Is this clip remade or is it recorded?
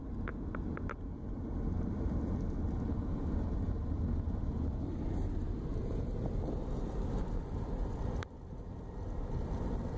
recorded